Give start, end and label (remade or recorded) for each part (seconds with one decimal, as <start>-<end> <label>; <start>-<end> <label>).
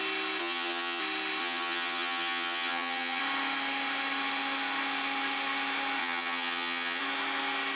0.0-0.4 recorded; 0.4-1.0 remade; 1.0-1.4 recorded; 1.4-3.2 remade; 3.2-6.0 recorded; 6.0-7.0 remade; 7.0-7.8 recorded